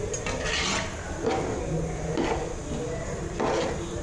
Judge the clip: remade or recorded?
recorded